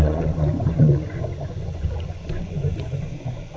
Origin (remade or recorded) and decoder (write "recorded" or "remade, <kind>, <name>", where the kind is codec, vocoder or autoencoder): remade, vocoder, Vocos